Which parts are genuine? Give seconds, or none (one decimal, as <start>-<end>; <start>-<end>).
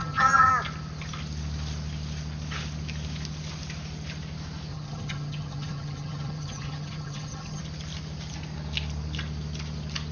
0.5-4.7; 7.6-10.1